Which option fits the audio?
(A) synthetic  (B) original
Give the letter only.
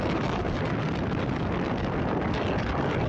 B